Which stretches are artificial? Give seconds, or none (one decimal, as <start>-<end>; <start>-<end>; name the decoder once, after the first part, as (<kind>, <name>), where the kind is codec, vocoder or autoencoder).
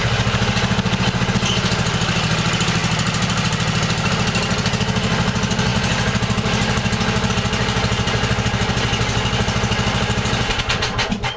none